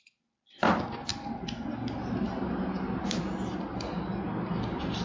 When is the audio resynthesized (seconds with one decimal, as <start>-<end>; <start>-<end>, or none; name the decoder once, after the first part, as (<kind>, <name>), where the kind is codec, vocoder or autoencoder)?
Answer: none